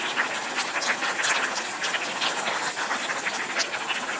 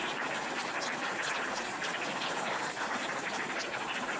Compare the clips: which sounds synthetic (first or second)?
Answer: second